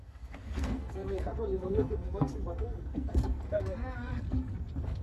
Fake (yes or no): yes